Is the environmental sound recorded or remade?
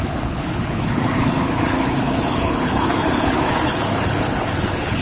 remade